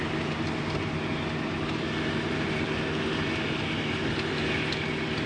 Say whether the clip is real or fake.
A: real